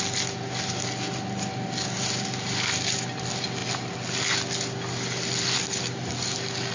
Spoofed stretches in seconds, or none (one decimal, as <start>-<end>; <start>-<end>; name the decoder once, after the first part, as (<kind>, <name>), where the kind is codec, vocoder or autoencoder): none